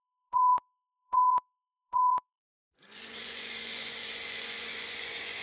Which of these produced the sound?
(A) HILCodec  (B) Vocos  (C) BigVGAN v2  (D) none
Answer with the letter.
B